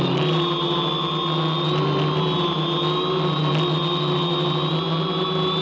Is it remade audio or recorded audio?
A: recorded